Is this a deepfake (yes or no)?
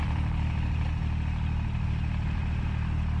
no